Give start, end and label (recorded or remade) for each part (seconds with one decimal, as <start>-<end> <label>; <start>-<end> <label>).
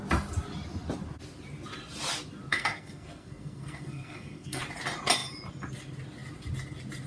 0.0-2.5 recorded; 2.5-4.6 remade; 4.6-7.1 recorded